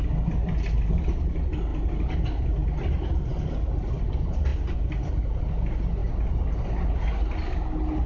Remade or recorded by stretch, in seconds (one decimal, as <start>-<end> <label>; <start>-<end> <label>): 0.0-8.1 recorded